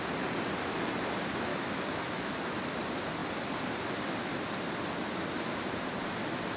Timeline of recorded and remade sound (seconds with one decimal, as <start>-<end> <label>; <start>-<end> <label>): 0.0-1.5 recorded; 1.5-2.4 remade; 2.4-6.6 recorded